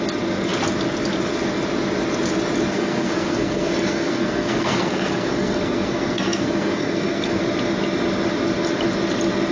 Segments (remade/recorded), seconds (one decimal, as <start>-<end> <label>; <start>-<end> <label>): 0.0-2.7 recorded; 2.7-7.4 remade; 7.4-9.5 recorded